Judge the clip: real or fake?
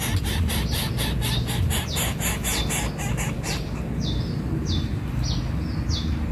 real